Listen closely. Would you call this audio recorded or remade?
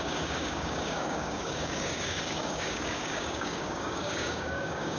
remade